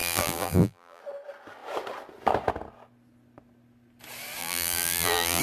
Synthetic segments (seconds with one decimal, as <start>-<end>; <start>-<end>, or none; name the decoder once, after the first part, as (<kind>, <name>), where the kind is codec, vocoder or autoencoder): 0.0-1.0 (vocoder, BigVGAN v2); 4.4-5.4

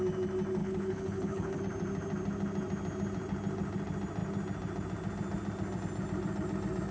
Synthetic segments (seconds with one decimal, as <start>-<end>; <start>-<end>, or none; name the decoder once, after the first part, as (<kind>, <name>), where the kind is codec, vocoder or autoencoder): 0.6-1.6 (codec, HILCodec)

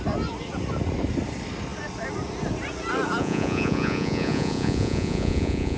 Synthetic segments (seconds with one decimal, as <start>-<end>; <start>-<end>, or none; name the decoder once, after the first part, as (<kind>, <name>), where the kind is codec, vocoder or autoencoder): 3.2-5.8 (vocoder, Vocos)

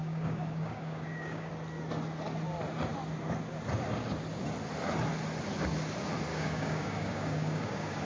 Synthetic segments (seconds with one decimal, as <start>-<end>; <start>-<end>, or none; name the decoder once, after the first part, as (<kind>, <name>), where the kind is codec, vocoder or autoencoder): 0.0-1.5 (codec, DAC); 6.3-8.0

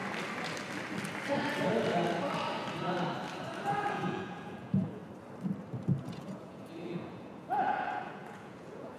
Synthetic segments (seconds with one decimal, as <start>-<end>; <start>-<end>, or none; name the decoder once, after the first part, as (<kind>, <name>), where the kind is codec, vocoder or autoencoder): 3.9-5.0 (vocoder, Vocos); 6.0-9.0

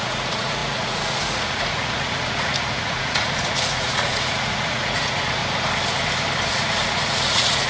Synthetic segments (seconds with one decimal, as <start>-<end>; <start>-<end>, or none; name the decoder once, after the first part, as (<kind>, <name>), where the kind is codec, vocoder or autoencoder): 0.0-5.4 (vocoder, Vocos); 6.5-7.7

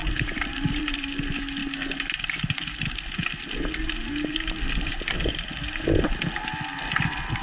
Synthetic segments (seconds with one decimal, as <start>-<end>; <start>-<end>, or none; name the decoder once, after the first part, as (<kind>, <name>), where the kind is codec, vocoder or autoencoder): 0.0-1.1 (vocoder, BigVGAN v2)